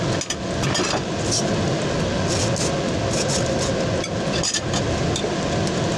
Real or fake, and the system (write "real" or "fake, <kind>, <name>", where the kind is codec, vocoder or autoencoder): real